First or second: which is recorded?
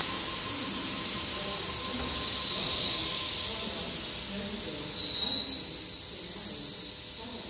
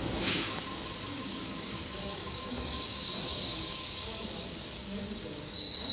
first